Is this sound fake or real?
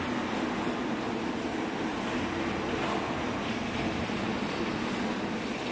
real